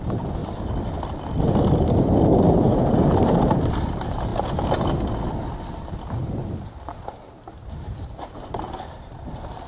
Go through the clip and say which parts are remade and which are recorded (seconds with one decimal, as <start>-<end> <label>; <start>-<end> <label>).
0.0-0.4 remade; 0.4-2.5 recorded; 2.5-4.3 remade; 4.3-7.1 recorded; 7.1-9.7 remade